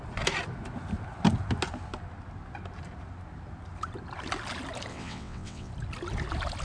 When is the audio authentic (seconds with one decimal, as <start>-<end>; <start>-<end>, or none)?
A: 0.0-4.9; 5.7-6.6